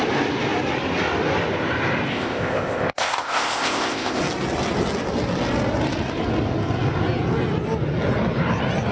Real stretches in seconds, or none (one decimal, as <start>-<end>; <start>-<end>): 0.0-2.1; 4.2-8.9